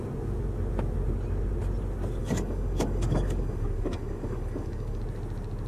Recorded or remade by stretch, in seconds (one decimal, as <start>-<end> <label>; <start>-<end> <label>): 0.0-2.2 recorded; 2.2-5.0 remade; 5.0-5.7 recorded